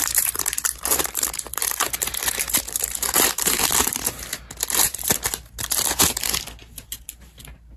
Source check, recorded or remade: remade